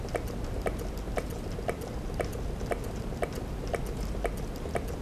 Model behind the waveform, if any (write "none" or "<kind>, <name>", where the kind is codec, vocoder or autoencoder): none